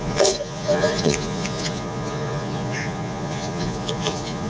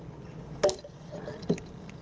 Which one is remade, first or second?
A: first